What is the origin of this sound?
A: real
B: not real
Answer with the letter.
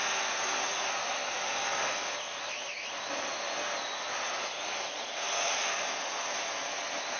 A